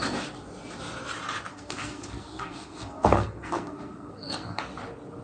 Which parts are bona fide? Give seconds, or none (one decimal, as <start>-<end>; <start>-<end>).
0.0-1.5; 4.6-5.2